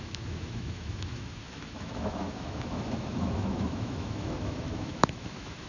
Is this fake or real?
fake